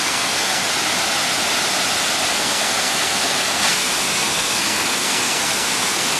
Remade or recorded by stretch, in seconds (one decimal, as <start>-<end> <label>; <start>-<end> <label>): 0.0-0.6 remade; 0.6-2.3 recorded; 2.3-6.2 remade

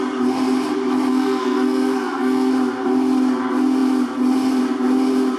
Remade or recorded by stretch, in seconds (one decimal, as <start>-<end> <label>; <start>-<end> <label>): 0.0-1.1 recorded; 1.1-2.5 remade; 2.5-5.4 recorded